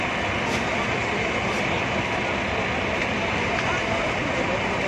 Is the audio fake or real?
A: real